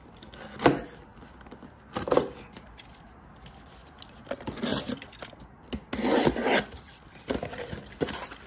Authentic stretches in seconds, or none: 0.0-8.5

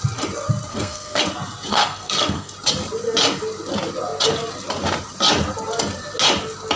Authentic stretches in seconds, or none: 0.0-0.7; 1.2-1.7; 2.5-6.8

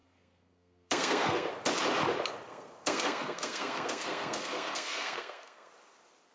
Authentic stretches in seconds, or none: 1.5-2.5; 5.7-6.3

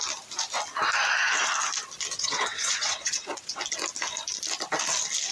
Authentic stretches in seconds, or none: 0.0-2.1; 3.6-5.3

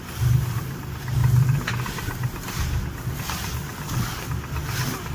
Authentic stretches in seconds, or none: 0.0-5.1

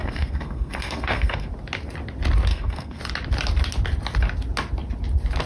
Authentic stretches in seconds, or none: 1.5-2.5; 3.0-5.5

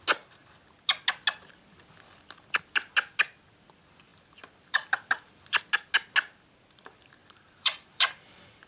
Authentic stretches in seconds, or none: 0.0-4.1; 5.6-7.2

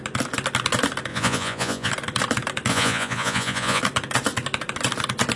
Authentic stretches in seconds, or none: 0.0-1.1; 1.9-2.7; 3.8-5.4